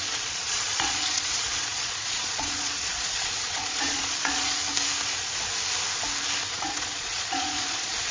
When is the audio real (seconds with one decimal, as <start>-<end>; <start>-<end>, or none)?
4.6-6.5